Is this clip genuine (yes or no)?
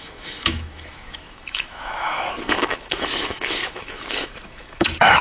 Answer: no